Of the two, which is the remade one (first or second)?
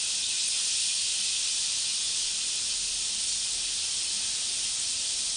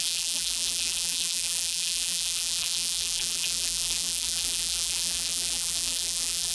second